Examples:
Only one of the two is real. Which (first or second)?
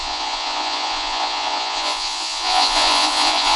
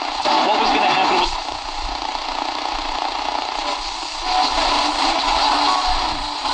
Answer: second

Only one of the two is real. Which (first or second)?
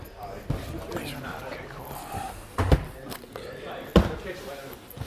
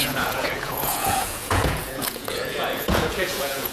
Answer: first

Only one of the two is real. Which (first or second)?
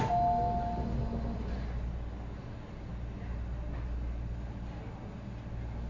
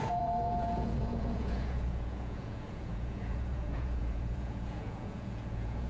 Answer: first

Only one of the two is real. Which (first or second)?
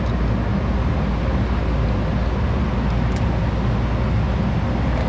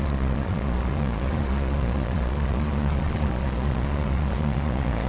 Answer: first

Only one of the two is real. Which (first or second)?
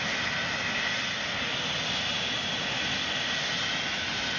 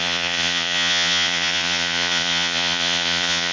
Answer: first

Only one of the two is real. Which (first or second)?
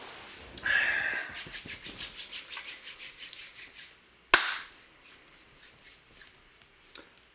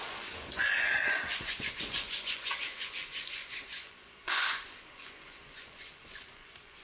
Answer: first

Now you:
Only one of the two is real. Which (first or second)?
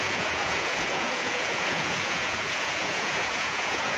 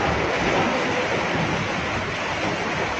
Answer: second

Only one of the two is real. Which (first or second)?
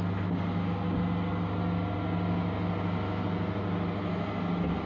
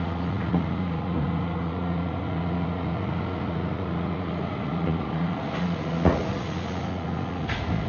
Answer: first